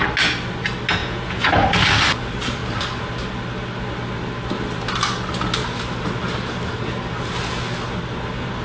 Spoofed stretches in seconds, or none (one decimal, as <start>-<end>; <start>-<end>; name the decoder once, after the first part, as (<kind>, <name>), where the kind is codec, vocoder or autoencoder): 1.0-1.5 (vocoder, Vocos)